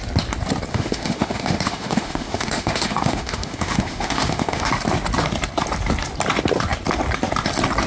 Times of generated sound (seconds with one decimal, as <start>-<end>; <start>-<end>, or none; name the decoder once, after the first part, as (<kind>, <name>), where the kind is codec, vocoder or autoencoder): 0.7-4.7 (autoencoder, DAC-VAE)